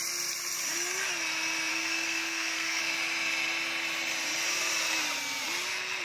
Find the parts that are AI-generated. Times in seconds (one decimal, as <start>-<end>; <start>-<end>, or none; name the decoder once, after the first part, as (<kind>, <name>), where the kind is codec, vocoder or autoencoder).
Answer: 1.7-2.8 (codec, SNAC)